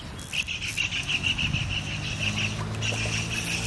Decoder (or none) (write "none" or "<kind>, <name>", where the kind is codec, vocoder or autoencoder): none